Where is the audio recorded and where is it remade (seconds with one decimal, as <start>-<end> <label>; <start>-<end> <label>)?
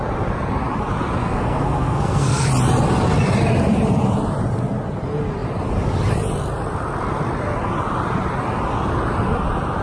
0.0-1.2 recorded; 1.2-2.5 remade; 2.5-9.8 recorded